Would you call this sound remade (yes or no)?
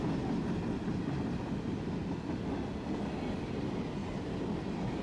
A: no